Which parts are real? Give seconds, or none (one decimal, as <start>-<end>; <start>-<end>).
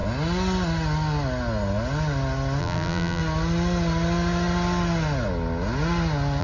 0.0-2.6; 3.2-6.4